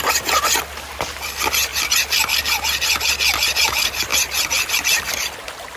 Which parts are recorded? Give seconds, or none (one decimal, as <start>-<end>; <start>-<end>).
0.0-5.8